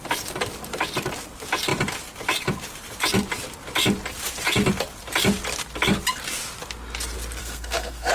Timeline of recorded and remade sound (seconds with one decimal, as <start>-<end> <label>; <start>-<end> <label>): 0.0-7.4 recorded; 7.4-8.1 remade

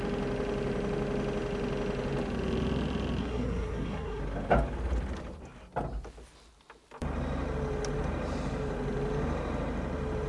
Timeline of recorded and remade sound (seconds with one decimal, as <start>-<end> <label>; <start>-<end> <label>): 0.0-3.2 recorded; 3.2-4.2 remade; 4.2-10.3 recorded